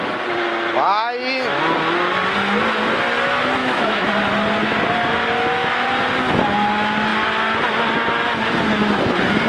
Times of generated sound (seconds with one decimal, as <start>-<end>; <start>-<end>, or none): 3.6-4.1